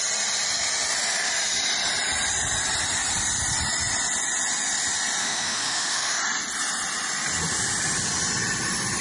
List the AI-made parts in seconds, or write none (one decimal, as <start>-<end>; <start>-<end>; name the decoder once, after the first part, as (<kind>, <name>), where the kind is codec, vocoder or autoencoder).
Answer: 5.2-6.2 (autoencoder, DAC-VAE)